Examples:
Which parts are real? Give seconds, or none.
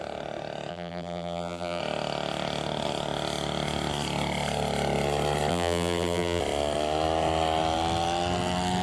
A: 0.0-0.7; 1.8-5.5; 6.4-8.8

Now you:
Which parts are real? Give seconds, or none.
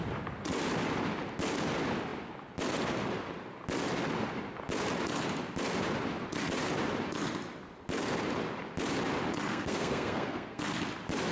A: 0.0-9.5; 10.6-11.3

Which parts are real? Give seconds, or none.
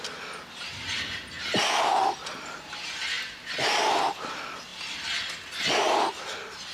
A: 0.0-6.7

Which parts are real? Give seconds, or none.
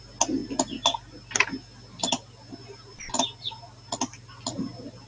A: 0.0-5.1